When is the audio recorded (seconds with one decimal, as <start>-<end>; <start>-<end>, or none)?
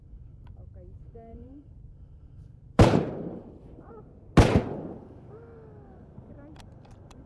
0.0-1.3; 4.0-7.3